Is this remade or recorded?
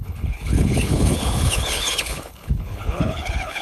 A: remade